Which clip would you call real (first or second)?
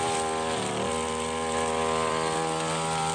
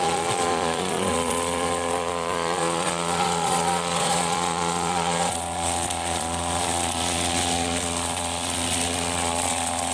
first